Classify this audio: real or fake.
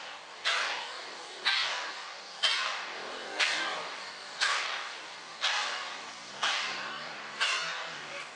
fake